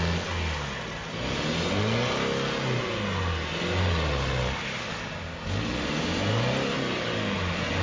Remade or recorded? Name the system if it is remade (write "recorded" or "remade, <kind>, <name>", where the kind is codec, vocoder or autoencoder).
recorded